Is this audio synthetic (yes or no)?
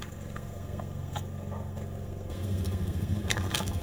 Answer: yes